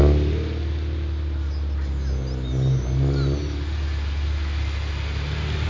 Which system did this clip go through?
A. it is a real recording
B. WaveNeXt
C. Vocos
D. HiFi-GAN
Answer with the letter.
A